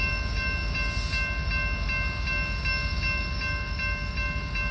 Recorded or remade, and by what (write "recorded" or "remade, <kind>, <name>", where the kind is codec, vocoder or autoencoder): recorded